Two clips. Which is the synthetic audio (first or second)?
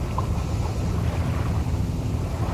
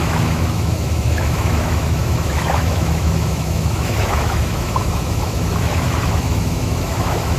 second